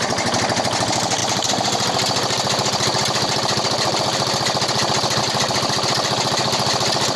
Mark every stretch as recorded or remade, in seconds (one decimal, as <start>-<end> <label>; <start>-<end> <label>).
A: 0.0-7.2 recorded

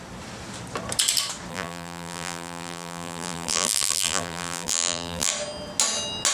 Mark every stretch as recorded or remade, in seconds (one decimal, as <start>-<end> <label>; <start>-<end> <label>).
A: 0.0-1.5 recorded; 1.5-5.3 remade; 5.3-6.3 recorded

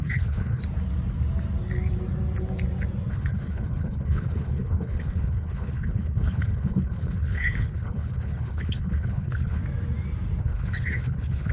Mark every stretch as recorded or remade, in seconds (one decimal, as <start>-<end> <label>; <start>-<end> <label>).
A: 0.0-0.6 remade; 0.6-3.1 recorded; 3.1-9.6 remade; 9.6-10.4 recorded; 10.4-11.5 remade

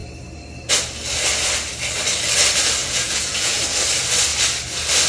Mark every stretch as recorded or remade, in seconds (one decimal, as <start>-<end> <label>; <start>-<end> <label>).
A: 0.0-2.8 recorded; 2.8-3.6 remade; 3.6-5.1 recorded

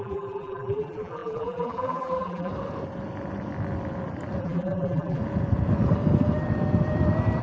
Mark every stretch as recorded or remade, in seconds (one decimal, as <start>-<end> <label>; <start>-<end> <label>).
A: 0.0-2.5 remade; 2.5-4.4 recorded; 4.4-5.2 remade; 5.2-7.4 recorded

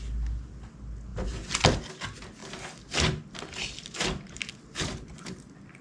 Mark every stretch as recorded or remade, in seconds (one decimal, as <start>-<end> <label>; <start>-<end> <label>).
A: 0.0-5.8 recorded

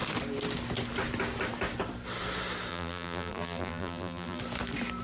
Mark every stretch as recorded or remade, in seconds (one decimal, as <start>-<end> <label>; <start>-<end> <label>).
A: 0.0-2.7 recorded; 2.7-4.4 remade; 4.4-5.0 recorded

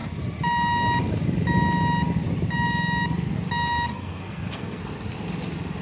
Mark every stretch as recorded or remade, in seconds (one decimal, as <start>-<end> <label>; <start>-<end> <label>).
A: 0.0-3.9 recorded; 3.9-4.8 remade; 4.8-5.8 recorded